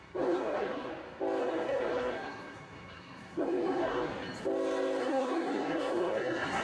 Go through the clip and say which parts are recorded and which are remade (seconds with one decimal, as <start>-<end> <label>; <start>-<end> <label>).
0.0-0.9 remade; 0.9-1.4 recorded; 1.4-4.1 remade; 4.1-5.0 recorded; 5.0-6.6 remade